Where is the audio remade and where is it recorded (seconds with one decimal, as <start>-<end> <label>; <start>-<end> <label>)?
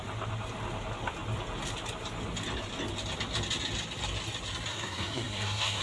0.0-4.7 recorded; 4.7-5.8 remade